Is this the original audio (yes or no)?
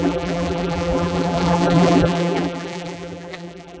no